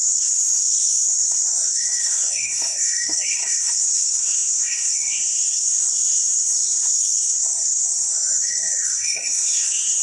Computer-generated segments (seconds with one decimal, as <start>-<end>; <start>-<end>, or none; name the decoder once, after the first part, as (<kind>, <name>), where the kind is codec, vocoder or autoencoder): 0.0-10.0 (codec, SNAC)

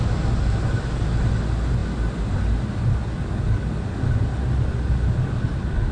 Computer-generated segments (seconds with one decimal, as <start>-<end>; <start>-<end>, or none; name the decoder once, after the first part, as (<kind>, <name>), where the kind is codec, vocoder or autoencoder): none

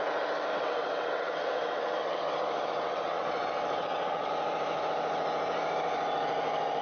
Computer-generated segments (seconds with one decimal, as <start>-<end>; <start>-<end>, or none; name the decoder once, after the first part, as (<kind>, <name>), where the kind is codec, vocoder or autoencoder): 0.5-4.3 (vocoder, WaveNeXt)